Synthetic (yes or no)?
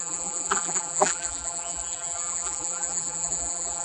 yes